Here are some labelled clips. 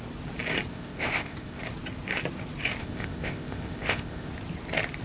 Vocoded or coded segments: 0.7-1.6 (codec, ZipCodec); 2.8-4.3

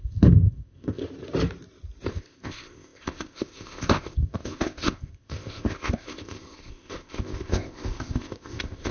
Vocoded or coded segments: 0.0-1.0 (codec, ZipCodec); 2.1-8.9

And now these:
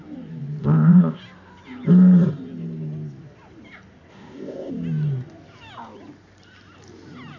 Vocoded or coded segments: 0.6-1.2 (codec, ZipCodec); 4.1-4.7

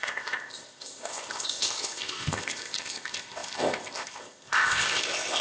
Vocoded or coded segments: 0.0-5.4 (codec, ZipCodec)

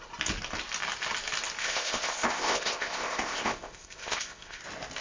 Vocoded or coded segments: 1.6-4.6 (codec, ZipCodec)

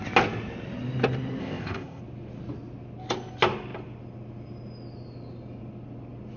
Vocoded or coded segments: 1.4-2.0 (codec, ZipCodec)

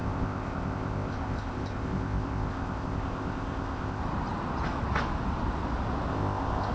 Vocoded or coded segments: 0.0-4.0 (codec, ZipCodec); 6.1-6.7

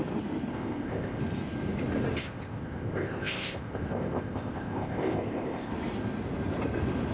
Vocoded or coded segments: 0.5-1.2 (codec, ZipCodec); 2.2-5.7